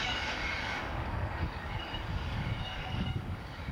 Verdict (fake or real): fake